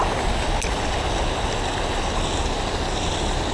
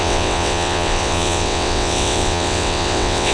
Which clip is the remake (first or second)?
second